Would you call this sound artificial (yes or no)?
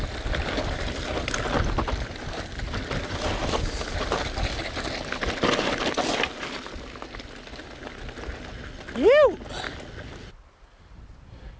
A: no